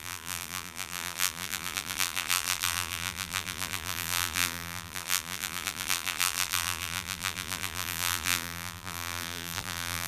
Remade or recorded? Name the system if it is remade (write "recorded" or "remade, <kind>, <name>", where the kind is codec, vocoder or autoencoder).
remade, vocoder, BigVGAN v2